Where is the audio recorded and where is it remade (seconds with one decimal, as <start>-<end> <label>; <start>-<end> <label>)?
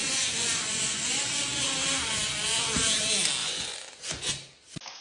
0.0-1.4 remade; 1.4-3.4 recorded; 3.4-4.3 remade; 4.3-5.0 recorded